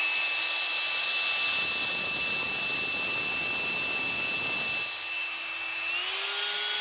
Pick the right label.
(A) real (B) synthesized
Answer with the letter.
A